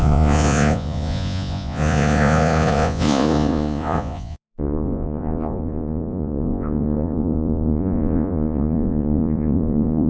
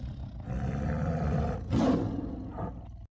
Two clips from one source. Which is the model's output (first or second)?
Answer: first